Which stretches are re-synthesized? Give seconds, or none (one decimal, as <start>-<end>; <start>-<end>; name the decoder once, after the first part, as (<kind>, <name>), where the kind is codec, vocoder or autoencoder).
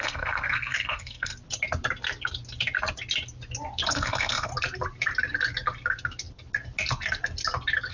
0.0-1.3 (codec, SNAC); 3.9-4.5